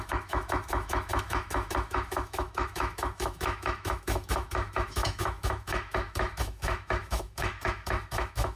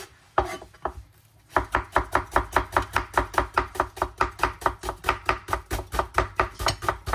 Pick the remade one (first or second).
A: first